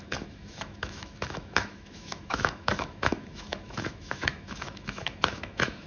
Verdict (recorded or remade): remade